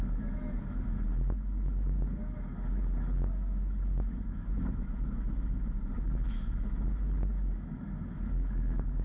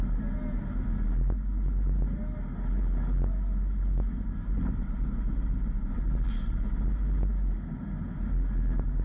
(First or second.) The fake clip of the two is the first